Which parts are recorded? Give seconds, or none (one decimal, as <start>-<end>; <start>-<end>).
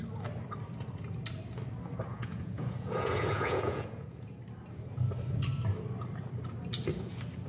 0.0-2.1; 4.3-7.5